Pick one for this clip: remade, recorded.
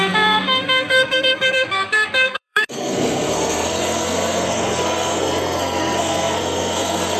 remade